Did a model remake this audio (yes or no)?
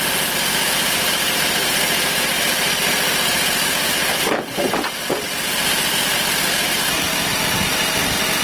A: yes